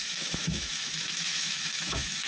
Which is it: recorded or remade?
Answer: remade